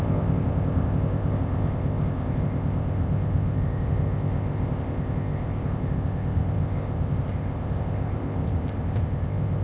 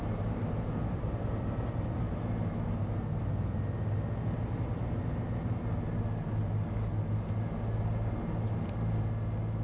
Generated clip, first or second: first